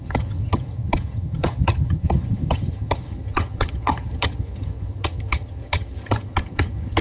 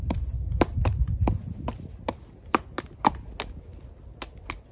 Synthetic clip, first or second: first